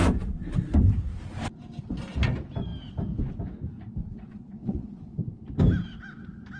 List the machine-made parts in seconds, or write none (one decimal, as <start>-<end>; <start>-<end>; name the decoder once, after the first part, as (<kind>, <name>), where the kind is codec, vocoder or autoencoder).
4.0-5.0 (vocoder, Vocos)